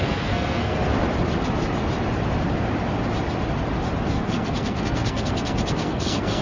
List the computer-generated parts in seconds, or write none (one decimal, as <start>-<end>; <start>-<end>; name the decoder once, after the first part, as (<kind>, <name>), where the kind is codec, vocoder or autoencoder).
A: 0.0-0.9 (codec, SNAC); 4.1-6.4